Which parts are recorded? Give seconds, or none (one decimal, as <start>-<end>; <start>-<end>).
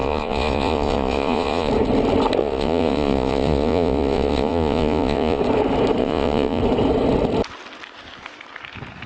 1.7-2.4; 5.4-6.0; 6.6-9.1